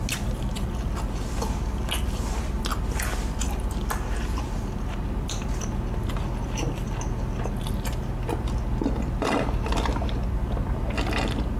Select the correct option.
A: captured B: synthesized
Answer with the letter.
A